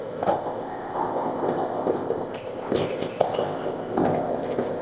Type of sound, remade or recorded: remade